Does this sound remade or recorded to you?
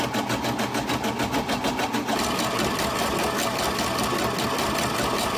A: recorded